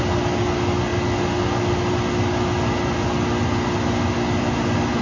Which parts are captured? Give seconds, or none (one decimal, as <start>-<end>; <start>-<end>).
0.0-5.0